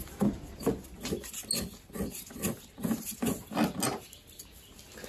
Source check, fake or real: real